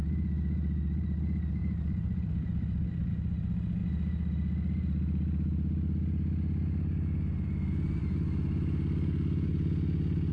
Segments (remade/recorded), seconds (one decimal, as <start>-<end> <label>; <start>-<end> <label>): 0.0-1.6 recorded; 1.6-3.1 remade; 3.1-10.3 recorded